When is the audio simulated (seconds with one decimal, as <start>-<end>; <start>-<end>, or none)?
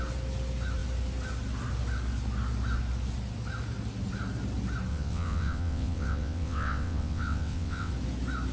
4.9-7.9